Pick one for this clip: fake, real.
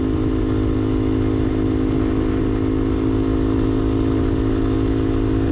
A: real